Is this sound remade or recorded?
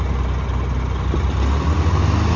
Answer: recorded